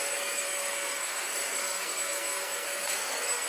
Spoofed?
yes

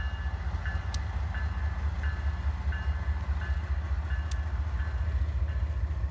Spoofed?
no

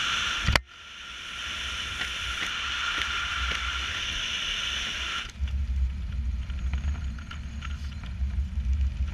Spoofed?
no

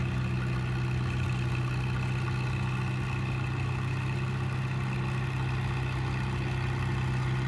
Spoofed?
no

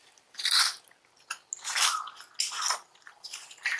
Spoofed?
no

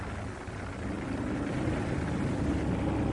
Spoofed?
no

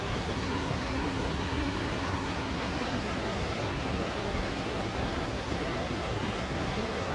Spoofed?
yes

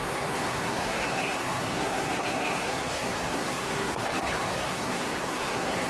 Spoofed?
yes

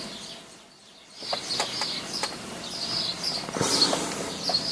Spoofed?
no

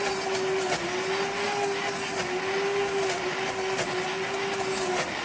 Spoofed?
no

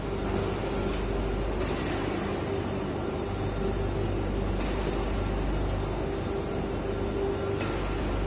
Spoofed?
no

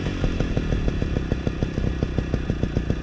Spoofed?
no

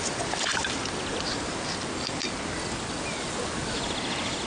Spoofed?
no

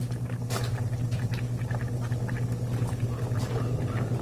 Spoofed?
no